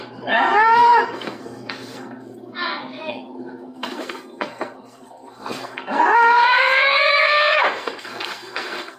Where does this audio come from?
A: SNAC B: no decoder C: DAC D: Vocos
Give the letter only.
A